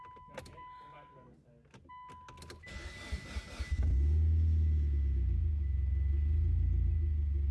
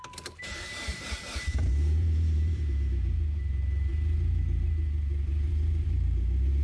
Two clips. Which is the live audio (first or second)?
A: first